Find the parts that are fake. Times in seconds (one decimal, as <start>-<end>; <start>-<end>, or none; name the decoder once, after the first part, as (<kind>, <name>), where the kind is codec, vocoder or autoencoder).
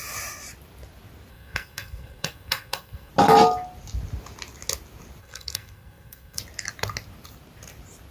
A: 1.3-3.1 (codec, SNAC); 5.2-6.4